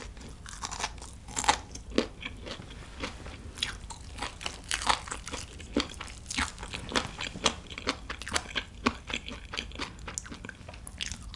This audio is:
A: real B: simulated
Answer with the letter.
A